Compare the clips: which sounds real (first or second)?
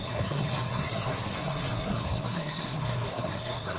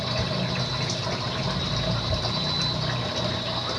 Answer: second